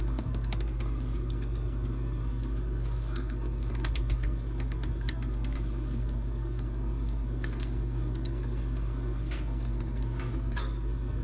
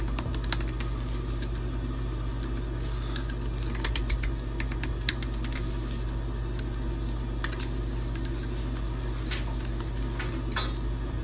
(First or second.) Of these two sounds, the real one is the second